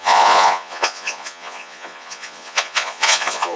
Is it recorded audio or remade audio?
remade